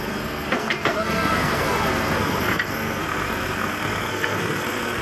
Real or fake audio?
fake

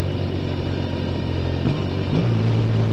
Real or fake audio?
real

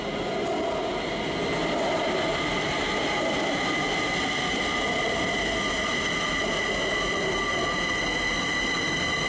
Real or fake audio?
real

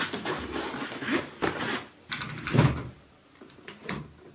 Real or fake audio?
real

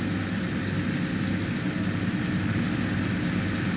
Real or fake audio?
real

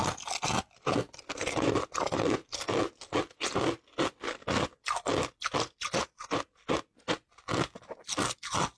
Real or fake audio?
real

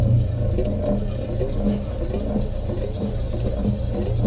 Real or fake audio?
real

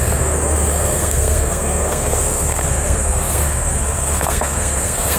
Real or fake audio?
fake